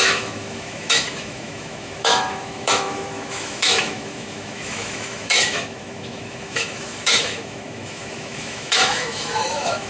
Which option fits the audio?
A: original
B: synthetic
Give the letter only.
B